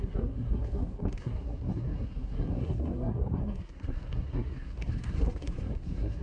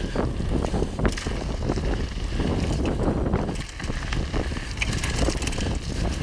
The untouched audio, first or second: second